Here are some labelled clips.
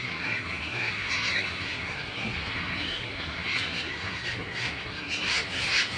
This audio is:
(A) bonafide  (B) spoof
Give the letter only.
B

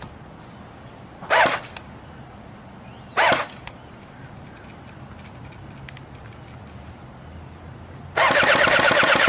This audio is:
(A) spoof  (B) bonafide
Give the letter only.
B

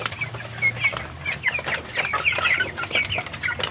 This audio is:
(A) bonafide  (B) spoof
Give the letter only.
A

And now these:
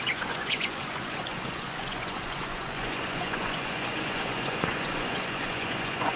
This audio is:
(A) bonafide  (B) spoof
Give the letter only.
B